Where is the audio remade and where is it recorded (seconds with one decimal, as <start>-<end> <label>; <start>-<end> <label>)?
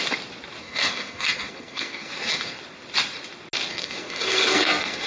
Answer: 0.0-0.6 recorded; 0.6-2.6 remade; 2.6-3.7 recorded; 3.7-5.1 remade